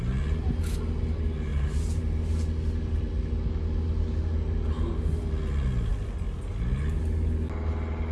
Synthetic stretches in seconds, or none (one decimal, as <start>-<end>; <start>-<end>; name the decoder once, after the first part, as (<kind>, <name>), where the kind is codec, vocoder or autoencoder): none